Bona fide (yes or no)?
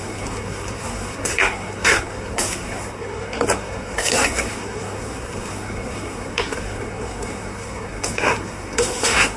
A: no